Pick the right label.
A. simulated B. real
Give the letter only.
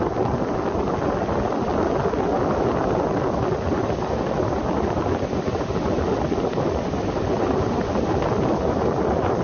B